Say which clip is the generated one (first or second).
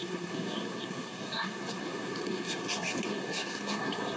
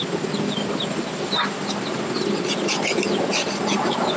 first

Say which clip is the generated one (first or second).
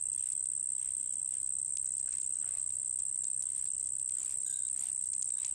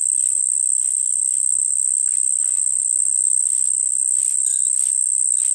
second